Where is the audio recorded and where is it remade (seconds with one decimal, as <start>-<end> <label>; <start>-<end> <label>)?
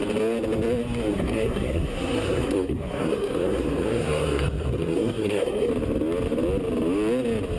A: 0.0-1.1 recorded; 1.1-5.7 remade; 5.7-7.6 recorded